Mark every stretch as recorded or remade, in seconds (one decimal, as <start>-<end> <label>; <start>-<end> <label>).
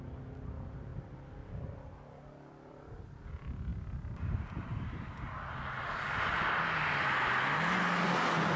0.0-0.9 recorded; 0.9-2.8 remade; 2.8-3.7 recorded; 3.7-4.9 remade; 4.9-8.6 recorded